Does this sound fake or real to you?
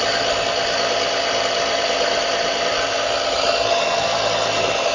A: real